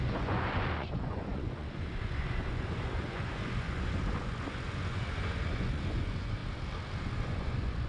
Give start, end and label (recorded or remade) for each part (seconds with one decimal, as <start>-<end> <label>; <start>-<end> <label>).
0.0-6.4 remade; 6.4-7.0 recorded; 7.0-7.9 remade